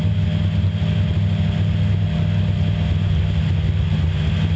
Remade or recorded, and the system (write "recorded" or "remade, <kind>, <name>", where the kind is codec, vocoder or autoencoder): recorded